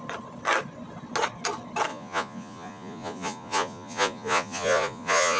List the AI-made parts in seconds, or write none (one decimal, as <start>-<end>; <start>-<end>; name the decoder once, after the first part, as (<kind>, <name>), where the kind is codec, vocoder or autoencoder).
1.9-5.4 (vocoder, Vocos)